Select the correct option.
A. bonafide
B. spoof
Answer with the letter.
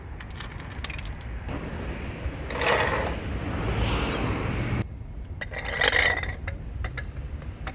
A